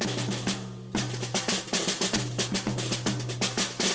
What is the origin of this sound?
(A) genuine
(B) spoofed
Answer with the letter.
A